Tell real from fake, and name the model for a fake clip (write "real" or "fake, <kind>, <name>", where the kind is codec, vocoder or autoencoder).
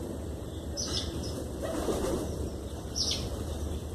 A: fake, vocoder, BigVGAN v2